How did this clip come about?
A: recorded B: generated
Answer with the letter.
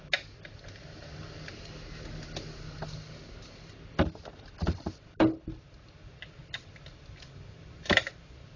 A